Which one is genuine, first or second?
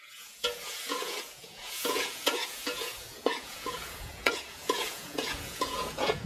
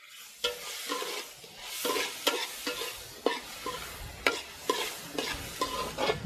second